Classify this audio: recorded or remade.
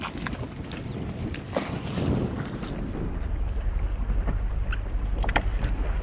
recorded